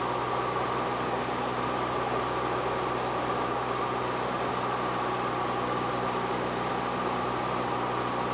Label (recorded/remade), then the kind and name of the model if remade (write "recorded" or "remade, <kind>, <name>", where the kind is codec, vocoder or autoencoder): recorded